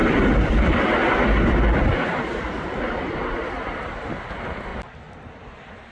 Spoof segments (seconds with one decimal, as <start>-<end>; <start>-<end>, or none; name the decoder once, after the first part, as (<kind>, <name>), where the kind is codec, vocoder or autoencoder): 0.0-3.5 (vocoder, BigVGAN v2); 4.7-5.9